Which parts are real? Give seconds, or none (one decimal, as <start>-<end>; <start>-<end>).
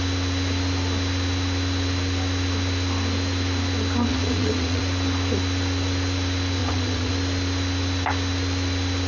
0.0-4.1; 4.8-6.6; 7.1-9.1